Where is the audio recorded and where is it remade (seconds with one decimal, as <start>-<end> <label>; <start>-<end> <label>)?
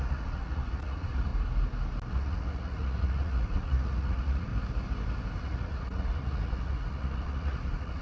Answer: 0.0-1.3 remade; 1.3-2.1 recorded; 2.1-4.5 remade; 4.5-5.4 recorded; 5.4-8.0 remade